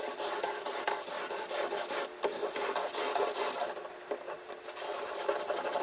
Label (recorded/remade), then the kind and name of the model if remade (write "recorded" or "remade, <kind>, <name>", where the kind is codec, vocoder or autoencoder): recorded